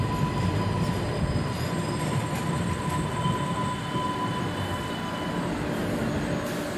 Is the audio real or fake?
real